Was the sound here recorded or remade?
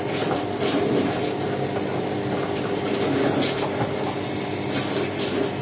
recorded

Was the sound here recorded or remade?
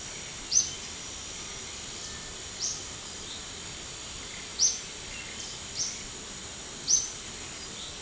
recorded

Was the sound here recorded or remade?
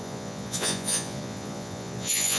remade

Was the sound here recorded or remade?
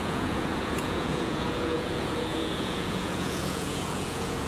remade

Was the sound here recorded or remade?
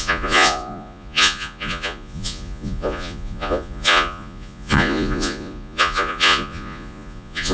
remade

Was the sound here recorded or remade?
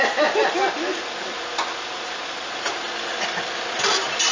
recorded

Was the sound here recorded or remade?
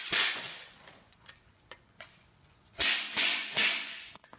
remade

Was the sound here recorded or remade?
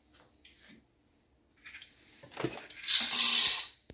recorded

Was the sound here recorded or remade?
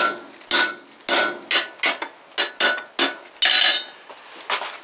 recorded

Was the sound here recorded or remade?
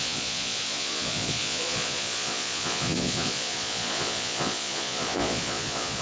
remade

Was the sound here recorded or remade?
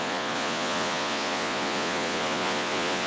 remade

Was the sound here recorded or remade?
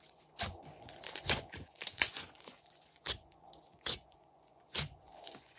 remade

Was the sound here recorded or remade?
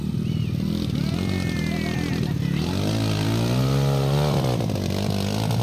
recorded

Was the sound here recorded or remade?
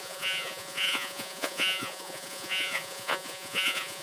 remade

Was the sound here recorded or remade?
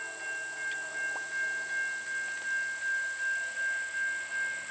recorded